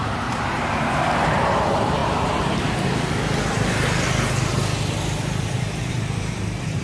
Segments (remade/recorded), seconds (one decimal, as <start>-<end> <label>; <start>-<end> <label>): 0.0-2.0 remade; 2.0-5.9 recorded; 5.9-6.8 remade

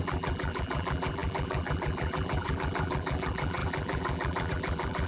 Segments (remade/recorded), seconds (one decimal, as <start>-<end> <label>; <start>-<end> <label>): 0.0-5.1 remade

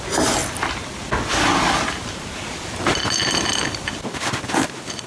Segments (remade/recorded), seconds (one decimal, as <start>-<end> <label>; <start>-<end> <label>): 0.0-0.4 remade; 0.4-1.9 recorded; 1.9-5.1 remade

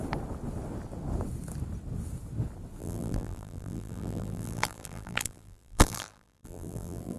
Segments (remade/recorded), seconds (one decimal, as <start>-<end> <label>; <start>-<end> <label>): 0.0-2.8 recorded; 2.8-7.2 remade

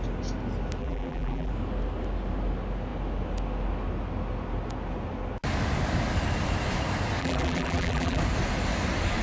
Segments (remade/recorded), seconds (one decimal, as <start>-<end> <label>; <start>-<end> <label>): 0.0-0.8 recorded; 0.8-1.5 remade; 1.5-7.2 recorded; 7.2-8.2 remade; 8.2-9.2 recorded

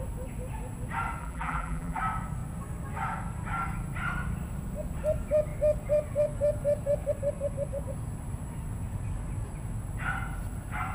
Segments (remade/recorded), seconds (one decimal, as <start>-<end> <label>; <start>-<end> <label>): 0.0-1.2 recorded; 1.2-2.0 remade; 2.0-10.9 recorded

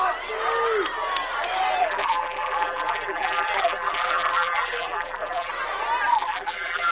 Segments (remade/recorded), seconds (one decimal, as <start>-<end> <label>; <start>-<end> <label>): 0.0-1.8 recorded; 1.8-5.5 remade; 5.5-6.1 recorded; 6.1-6.9 remade